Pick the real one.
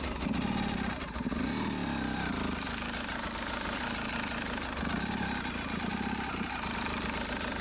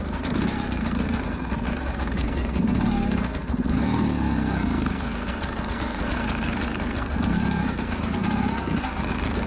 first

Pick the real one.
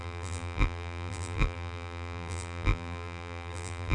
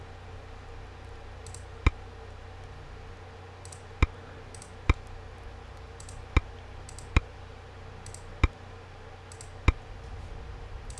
second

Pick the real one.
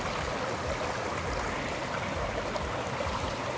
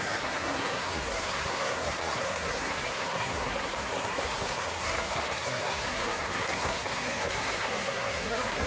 first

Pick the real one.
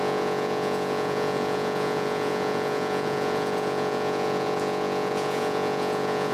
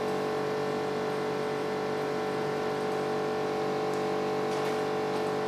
second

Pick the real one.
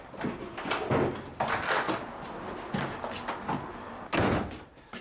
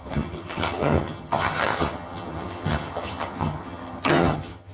first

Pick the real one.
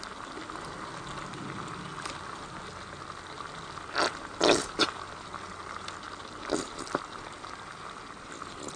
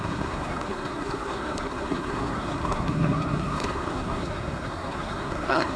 first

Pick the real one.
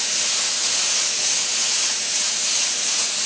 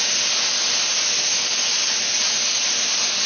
second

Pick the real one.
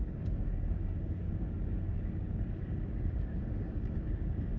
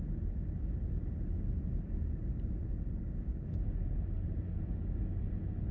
second